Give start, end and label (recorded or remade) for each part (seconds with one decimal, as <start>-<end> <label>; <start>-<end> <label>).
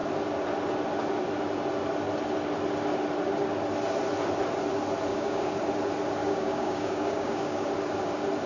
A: 0.0-5.1 recorded; 5.1-5.6 remade; 5.6-6.2 recorded; 6.2-7.7 remade; 7.7-8.5 recorded